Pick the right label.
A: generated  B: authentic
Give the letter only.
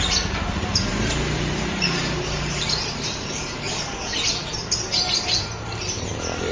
A